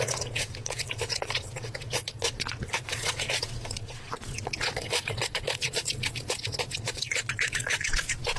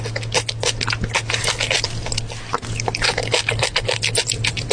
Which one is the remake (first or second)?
first